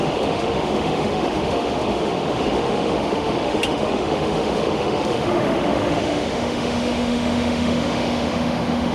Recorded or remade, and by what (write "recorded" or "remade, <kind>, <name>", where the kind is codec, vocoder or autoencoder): remade, autoencoder, DAC-VAE